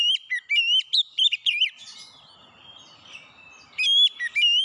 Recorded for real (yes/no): yes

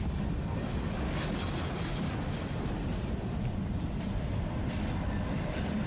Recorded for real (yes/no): no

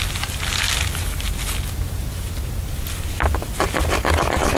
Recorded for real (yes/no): yes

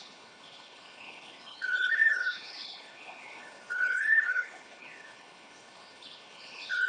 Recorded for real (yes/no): no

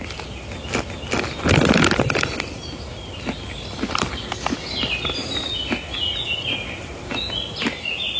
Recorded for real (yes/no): yes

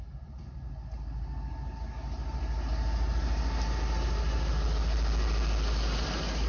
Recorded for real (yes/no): yes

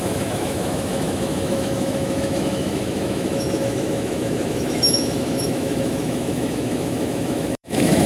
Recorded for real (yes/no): no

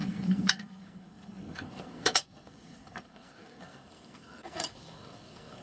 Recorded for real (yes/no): no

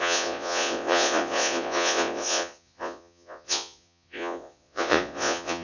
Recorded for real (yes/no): no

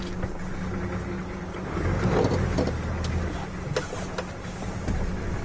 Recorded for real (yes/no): yes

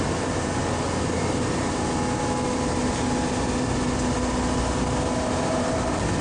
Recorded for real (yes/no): yes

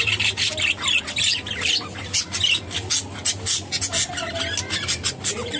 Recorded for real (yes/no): yes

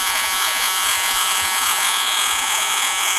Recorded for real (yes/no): no